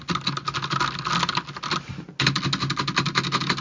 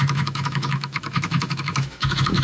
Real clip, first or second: first